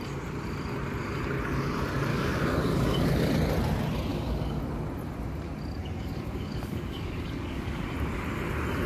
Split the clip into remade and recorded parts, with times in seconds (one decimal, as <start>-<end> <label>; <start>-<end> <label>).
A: 0.0-2.1 recorded; 2.1-3.3 remade; 3.3-4.1 recorded; 4.1-4.6 remade; 4.6-5.8 recorded; 5.8-7.9 remade; 7.9-8.9 recorded